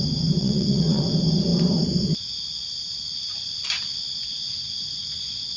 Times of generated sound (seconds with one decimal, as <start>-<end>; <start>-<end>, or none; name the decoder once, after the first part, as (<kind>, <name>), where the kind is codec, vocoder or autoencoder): 0.4-1.0 (vocoder, WaveNeXt); 4.3-5.6